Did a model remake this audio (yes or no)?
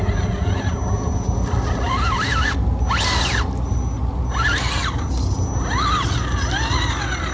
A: no